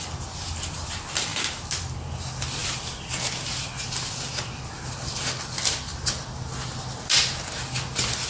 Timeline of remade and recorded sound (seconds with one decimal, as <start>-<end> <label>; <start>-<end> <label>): 0.0-1.3 recorded; 1.3-2.1 remade; 2.1-8.3 recorded